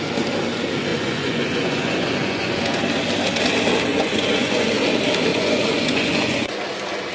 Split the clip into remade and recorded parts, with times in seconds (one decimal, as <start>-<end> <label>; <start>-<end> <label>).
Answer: 0.0-0.9 recorded; 0.9-2.8 remade; 2.8-3.9 recorded; 3.9-4.7 remade; 4.7-5.3 recorded; 5.3-6.6 remade; 6.6-7.1 recorded

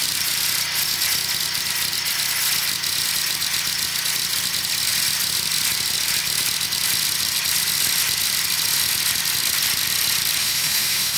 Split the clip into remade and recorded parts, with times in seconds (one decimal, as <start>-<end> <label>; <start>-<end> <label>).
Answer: 0.0-10.4 recorded; 10.4-11.2 remade

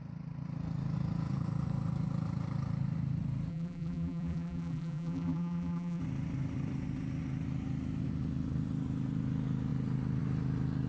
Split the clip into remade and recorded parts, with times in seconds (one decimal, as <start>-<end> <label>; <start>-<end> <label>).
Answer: 0.0-3.5 recorded; 3.5-6.0 remade; 6.0-10.9 recorded

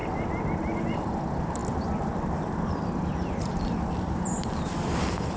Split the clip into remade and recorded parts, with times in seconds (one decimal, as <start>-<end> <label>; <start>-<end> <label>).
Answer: 0.0-0.8 recorded; 0.8-5.4 remade